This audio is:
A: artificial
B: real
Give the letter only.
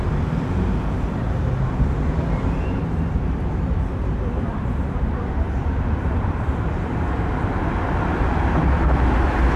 A